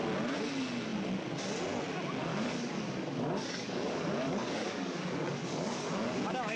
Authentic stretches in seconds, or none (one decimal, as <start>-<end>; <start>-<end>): 0.0-2.3